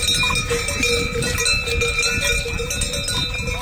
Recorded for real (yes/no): yes